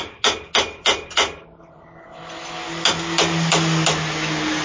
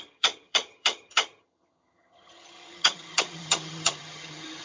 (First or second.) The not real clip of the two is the second